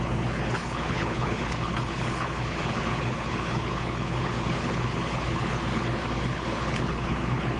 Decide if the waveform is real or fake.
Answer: fake